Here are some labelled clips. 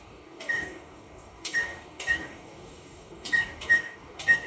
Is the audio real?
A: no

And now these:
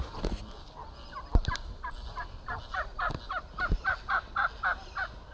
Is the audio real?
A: yes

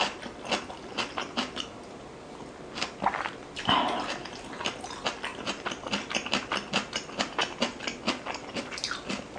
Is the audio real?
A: yes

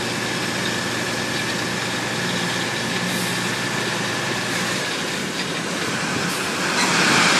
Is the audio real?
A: yes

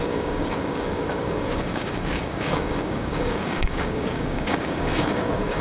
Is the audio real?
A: no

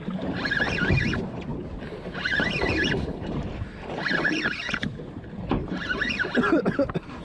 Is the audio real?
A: no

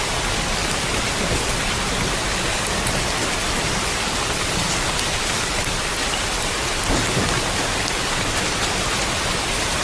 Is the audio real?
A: yes